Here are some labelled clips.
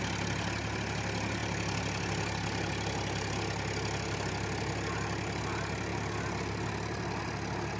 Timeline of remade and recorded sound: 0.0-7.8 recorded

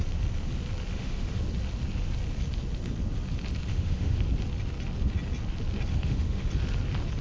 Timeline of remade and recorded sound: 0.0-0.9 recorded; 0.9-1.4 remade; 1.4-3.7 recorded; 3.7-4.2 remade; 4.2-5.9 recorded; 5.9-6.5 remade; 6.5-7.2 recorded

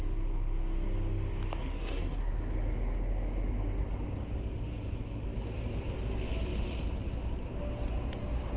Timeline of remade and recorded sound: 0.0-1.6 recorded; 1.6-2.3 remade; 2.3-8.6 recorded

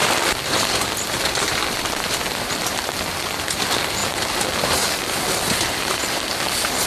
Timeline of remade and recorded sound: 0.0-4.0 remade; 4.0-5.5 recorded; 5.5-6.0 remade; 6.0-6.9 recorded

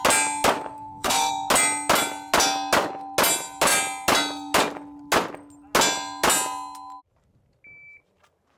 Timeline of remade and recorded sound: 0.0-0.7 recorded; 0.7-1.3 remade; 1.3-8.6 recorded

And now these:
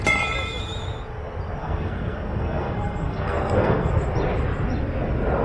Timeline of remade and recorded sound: 0.0-1.6 recorded; 1.6-3.9 remade; 3.9-5.4 recorded

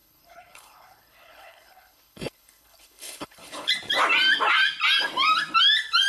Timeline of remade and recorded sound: 0.0-3.7 remade; 3.7-6.1 recorded